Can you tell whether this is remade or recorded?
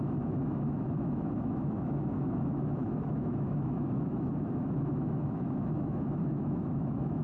remade